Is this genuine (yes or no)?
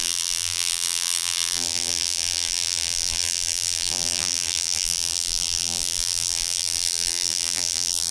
no